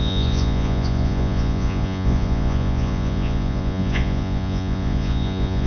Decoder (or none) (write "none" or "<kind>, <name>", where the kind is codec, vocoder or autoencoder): vocoder, Vocos